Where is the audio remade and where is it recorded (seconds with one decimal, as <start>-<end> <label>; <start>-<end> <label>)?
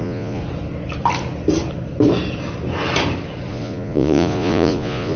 0.0-0.4 remade; 0.4-3.5 recorded; 3.5-5.2 remade